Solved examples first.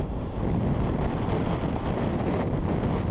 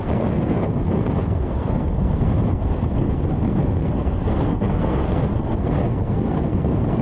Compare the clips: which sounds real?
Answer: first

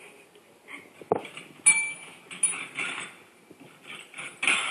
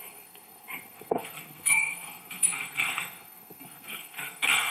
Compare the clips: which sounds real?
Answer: first